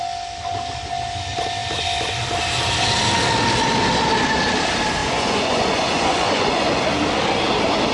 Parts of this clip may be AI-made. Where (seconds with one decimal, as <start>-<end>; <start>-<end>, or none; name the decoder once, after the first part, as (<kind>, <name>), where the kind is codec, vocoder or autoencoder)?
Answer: 5.0-6.8 (vocoder, Vocos)